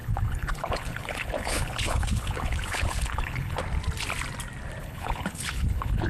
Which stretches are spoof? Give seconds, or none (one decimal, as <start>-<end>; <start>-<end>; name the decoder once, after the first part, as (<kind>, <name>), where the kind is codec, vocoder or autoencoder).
0.0-3.6 (codec, HILCodec); 4.8-6.1